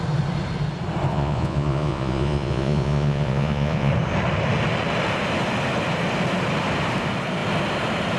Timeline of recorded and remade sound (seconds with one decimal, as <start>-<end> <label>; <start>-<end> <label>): 0.0-1.1 recorded; 1.1-3.9 remade; 3.9-8.2 recorded